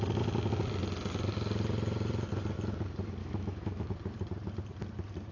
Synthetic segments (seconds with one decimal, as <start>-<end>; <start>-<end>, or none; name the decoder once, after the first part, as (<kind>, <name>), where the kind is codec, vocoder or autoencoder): 3.2-3.9 (autoencoder, DAC-VAE)